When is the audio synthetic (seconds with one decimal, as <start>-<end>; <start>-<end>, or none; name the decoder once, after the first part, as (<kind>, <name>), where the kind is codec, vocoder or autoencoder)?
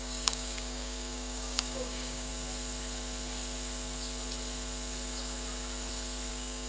0.0-2.3 (codec, DAC); 6.3-6.7